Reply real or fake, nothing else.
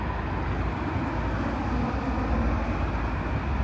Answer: real